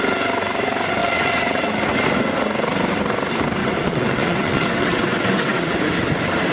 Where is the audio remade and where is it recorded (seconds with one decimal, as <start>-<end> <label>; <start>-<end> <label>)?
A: 0.0-1.0 recorded; 1.0-1.7 remade; 1.7-3.6 recorded; 3.6-5.8 remade; 5.8-6.5 recorded